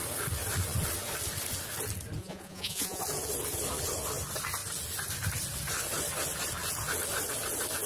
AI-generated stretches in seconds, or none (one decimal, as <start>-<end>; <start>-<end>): 2.2-3.0